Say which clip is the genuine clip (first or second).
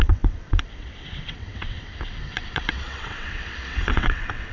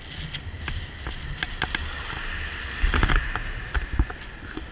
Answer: second